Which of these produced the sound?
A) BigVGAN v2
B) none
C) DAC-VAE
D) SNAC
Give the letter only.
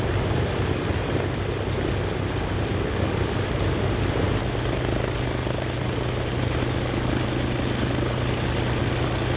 B